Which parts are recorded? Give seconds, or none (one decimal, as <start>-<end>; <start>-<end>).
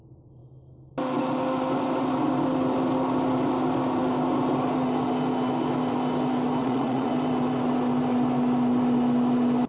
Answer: 0.0-6.6; 7.1-9.7